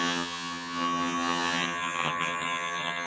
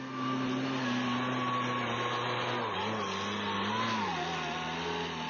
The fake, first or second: first